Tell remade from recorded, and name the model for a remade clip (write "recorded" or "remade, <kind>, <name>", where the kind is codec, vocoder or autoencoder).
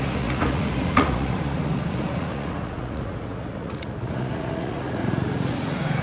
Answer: remade, vocoder, Vocos